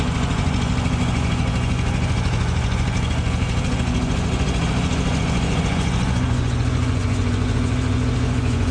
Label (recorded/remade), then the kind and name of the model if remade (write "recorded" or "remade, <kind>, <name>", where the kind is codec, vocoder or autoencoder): remade, vocoder, Vocos